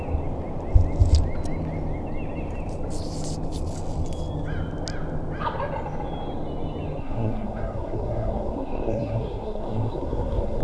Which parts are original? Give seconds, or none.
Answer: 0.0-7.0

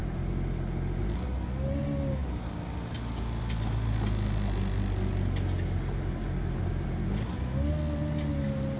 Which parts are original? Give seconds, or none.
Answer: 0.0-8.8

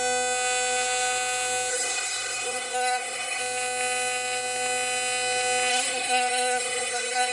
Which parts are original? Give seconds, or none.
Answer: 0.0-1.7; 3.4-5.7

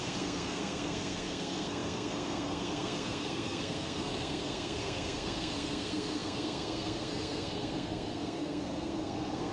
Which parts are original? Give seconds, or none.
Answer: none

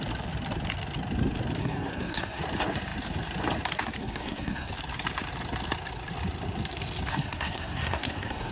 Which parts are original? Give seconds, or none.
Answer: 0.0-1.6; 2.4-4.0; 4.7-7.1